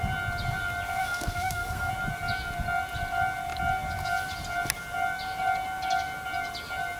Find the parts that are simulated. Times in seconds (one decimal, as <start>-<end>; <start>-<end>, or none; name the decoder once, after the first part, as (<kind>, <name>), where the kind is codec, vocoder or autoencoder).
1.0-1.9 (codec, SNAC)